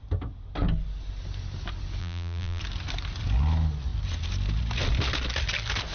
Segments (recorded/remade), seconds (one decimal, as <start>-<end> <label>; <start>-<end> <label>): 0.0-2.0 recorded; 2.0-2.6 remade; 2.6-5.9 recorded